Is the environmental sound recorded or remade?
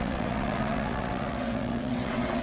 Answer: remade